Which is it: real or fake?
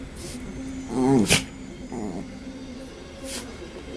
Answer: real